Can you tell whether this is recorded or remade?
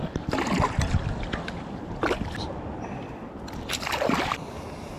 recorded